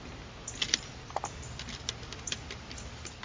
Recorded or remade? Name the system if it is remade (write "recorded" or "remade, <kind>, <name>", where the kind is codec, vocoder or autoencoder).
recorded